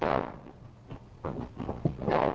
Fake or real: fake